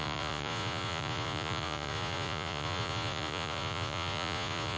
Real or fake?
fake